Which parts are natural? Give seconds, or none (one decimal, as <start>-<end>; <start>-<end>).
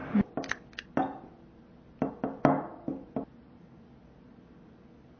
0.0-5.2